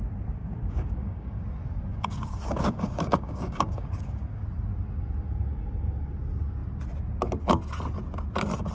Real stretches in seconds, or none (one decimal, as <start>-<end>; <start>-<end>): 0.0-0.4; 1.4-1.9; 4.4-8.7

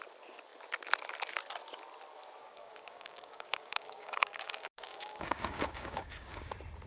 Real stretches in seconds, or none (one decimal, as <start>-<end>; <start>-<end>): 0.0-2.4; 6.5-6.9

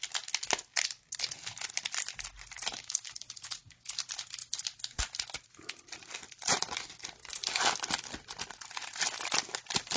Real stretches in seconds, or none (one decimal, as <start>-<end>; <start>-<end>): 0.0-2.8; 3.9-10.0

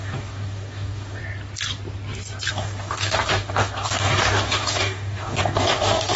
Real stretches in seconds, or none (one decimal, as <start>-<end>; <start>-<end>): 1.2-2.5

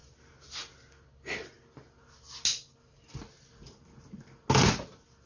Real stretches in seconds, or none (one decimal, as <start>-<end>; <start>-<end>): 0.0-5.3

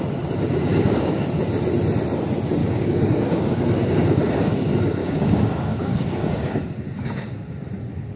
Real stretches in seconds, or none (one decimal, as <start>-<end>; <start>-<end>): 0.0-0.7; 1.2-2.6; 3.6-5.0; 6.6-8.2

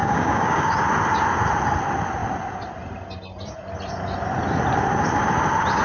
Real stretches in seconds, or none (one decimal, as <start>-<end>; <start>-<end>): 0.7-5.8

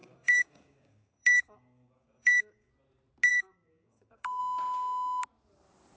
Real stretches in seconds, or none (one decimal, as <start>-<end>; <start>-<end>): 2.7-3.3; 4.4-6.0